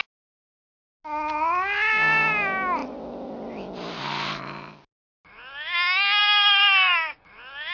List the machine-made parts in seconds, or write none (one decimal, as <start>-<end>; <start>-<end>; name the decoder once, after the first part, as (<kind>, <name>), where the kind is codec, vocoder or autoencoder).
6.2-7.2 (codec, DAC)